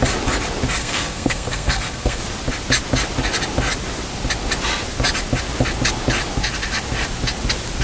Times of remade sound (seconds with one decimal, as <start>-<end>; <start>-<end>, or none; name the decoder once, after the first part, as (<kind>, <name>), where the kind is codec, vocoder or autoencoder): 0.8-2.2 (codec, SNAC)